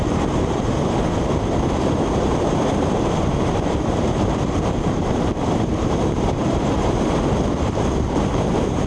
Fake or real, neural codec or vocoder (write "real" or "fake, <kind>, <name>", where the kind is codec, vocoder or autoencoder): fake, vocoder, BigVGAN v2